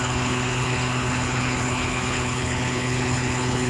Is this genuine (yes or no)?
no